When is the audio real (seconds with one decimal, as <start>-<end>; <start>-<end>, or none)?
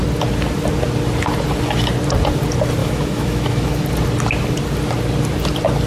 0.0-2.8; 3.8-5.9